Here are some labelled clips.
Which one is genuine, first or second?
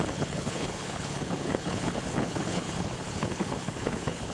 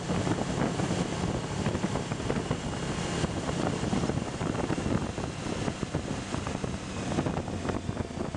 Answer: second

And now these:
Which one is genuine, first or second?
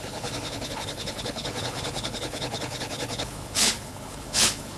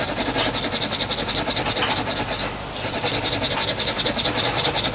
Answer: second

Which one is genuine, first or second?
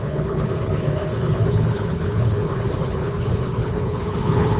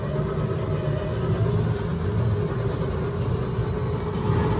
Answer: second